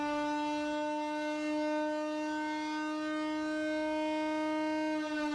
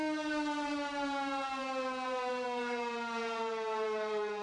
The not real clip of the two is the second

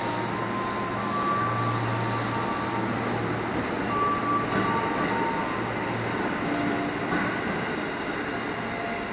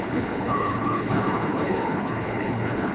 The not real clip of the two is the second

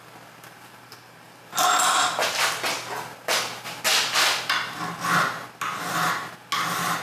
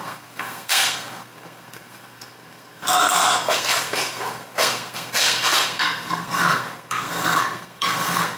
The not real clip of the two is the second